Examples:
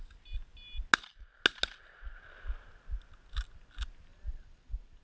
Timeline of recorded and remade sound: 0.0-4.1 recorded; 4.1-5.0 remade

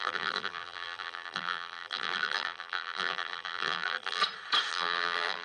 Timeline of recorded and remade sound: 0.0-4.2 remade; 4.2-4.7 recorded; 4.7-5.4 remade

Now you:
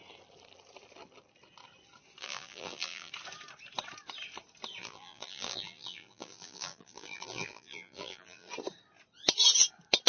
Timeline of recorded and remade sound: 0.0-2.2 recorded; 2.2-3.1 remade; 3.1-4.8 recorded; 4.8-8.5 remade; 8.5-10.1 recorded

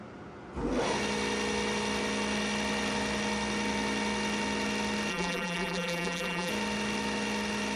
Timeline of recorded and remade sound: 0.0-5.1 recorded; 5.1-6.5 remade; 6.5-7.8 recorded

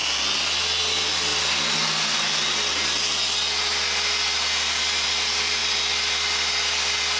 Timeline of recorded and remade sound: 0.0-5.6 recorded; 5.6-7.2 remade

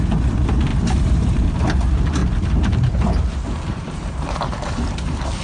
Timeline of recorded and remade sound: 0.0-0.7 recorded; 0.7-1.5 remade; 1.5-2.2 recorded; 2.2-5.4 remade